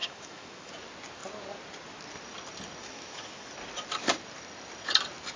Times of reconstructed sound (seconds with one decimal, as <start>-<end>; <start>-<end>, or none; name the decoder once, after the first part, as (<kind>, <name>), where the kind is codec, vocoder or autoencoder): 0.0-0.7 (autoencoder, DAC-VAE); 2.8-3.5